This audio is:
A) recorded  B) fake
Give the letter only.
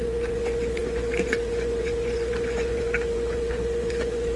B